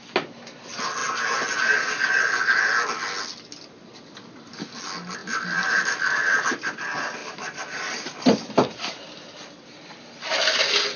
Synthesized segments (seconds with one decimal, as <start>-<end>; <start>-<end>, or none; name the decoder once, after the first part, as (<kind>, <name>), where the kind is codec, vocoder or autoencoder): 5.2-5.8 (vocoder, BigVGAN v2); 7.2-8.9